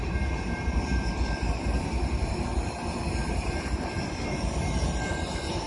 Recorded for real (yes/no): no